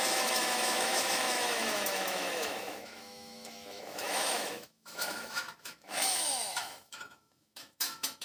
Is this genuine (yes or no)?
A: no